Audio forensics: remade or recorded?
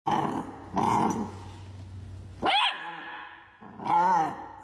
recorded